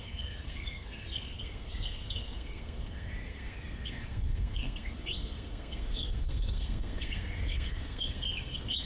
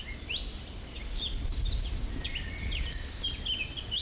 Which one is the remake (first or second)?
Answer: first